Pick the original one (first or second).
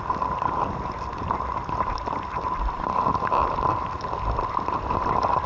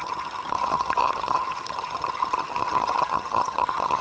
first